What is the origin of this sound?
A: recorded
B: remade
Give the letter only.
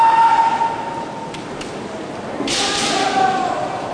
A